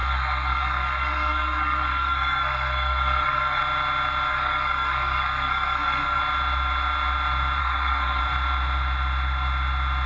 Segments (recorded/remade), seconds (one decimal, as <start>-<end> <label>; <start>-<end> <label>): 0.0-3.6 remade; 3.6-4.3 recorded; 4.3-6.2 remade; 6.2-7.6 recorded; 7.6-8.2 remade; 8.2-10.1 recorded